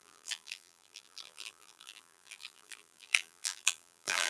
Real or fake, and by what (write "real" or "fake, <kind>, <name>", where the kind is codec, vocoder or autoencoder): fake, vocoder, BigVGAN v2